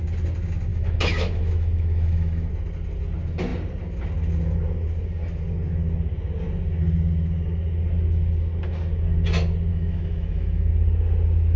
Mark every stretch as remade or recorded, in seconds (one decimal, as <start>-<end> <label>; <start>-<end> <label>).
0.0-0.7 recorded; 0.7-2.5 remade; 2.5-9.7 recorded; 9.7-10.7 remade; 10.7-11.6 recorded